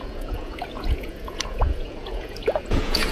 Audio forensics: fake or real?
fake